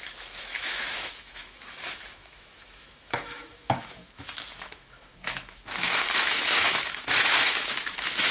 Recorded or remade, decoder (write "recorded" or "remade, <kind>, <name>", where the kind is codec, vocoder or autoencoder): remade, autoencoder, DAC-VAE